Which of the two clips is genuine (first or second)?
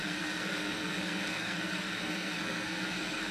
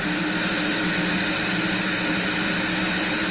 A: second